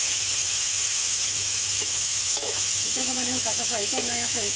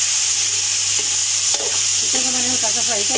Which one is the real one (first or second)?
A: second